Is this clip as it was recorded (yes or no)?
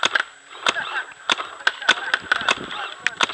yes